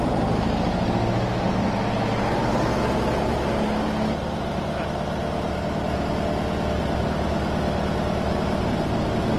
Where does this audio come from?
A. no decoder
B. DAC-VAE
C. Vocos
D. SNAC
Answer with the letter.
A